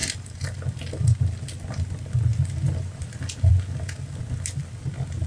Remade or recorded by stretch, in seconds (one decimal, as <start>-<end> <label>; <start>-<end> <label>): 0.0-5.3 recorded